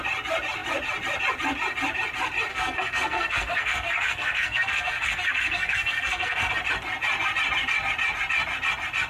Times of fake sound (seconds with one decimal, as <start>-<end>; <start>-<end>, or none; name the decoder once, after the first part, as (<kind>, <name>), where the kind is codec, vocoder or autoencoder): 2.5-6.5 (codec, SNAC)